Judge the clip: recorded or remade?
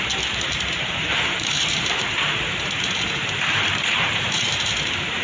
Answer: remade